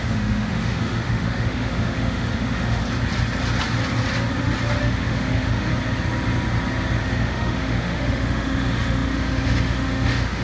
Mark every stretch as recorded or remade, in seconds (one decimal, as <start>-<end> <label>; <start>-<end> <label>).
0.0-2.8 remade; 2.8-4.8 recorded; 4.8-5.7 remade; 5.7-7.0 recorded; 7.0-10.4 remade